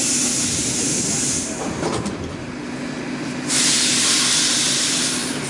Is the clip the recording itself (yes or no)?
no